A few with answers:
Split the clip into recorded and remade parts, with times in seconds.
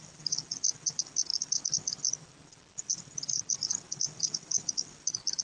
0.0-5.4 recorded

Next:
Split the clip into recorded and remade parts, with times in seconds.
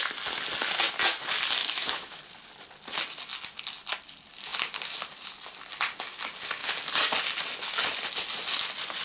0.0-1.6 recorded; 1.6-2.2 remade; 2.2-9.0 recorded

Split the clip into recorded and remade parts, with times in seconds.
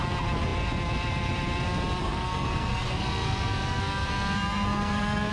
0.0-2.0 recorded; 2.0-5.3 remade